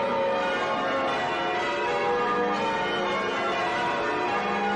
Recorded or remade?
recorded